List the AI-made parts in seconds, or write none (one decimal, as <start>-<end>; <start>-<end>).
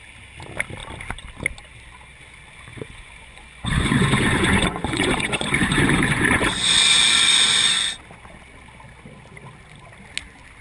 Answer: 2.7-6.7